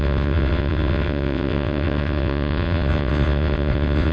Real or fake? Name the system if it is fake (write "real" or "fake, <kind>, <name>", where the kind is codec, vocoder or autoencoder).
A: fake, vocoder, WaveNeXt